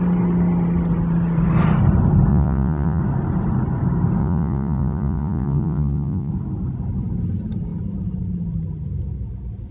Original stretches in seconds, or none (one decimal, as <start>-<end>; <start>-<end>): 0.0-2.3; 3.0-4.2; 6.3-9.7